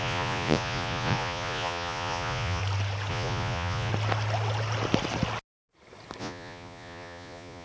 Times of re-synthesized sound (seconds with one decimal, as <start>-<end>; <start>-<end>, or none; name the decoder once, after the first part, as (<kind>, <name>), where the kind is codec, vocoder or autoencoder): 0.0-2.6 (vocoder, Vocos); 3.1-3.9; 6.2-7.6

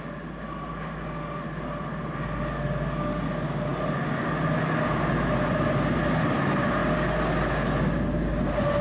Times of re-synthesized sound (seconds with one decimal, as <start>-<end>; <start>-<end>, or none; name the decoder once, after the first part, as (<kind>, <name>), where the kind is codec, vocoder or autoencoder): none